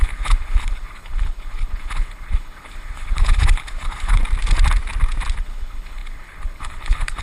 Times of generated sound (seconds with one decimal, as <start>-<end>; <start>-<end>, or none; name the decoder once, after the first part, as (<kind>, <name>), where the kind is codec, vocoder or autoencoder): 0.0-4.2 (codec, HILCodec); 5.4-7.2